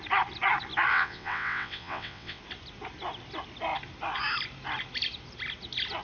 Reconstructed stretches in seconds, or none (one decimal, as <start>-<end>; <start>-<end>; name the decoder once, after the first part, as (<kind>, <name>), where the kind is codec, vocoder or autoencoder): 0.9-2.4 (vocoder, WaveNeXt)